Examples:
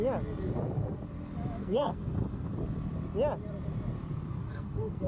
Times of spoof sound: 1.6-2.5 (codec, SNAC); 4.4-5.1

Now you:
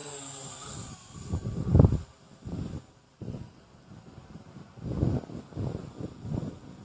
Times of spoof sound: none

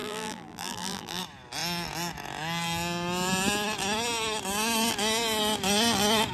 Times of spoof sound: 0.0-1.2 (vocoder, BigVGAN v2)

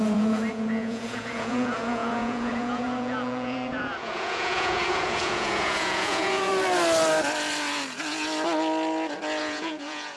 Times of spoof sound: 0.0-6.5 (vocoder, Vocos); 9.4-10.2

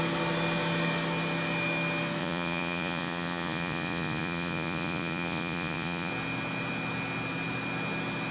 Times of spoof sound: 2.2-6.1 (vocoder, Vocos)

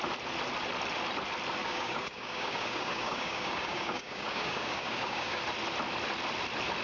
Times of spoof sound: 1.6-5.4 (codec, DAC)

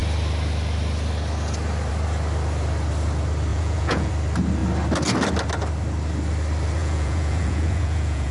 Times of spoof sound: 3.5-4.1 (vocoder, Vocos); 6.8-8.3